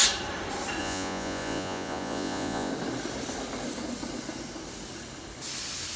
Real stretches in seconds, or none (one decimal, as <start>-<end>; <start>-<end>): 0.0-0.8; 2.7-6.0